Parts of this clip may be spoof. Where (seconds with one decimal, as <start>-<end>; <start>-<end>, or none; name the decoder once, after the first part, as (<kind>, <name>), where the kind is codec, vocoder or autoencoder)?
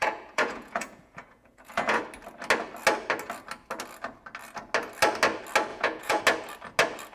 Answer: 0.0-2.0 (vocoder, Vocos); 5.7-6.2